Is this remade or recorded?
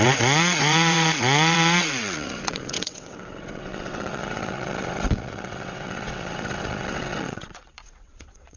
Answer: remade